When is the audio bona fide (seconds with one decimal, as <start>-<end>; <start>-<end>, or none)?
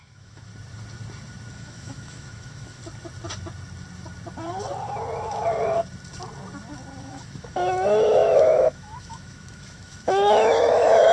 0.5-1.5; 2.8-7.0